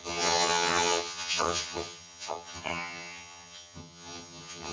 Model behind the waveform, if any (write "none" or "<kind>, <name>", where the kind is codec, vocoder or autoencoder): vocoder, HiFi-GAN